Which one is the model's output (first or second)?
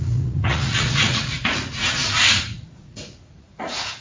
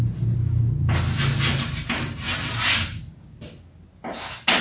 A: first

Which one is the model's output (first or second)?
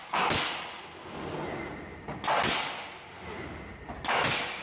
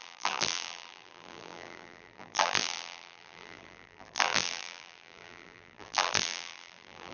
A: second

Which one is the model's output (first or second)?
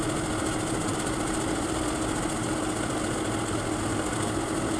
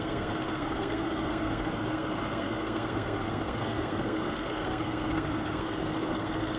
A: second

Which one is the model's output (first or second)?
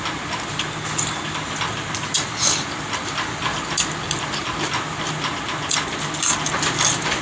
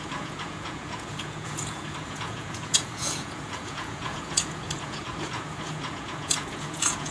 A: second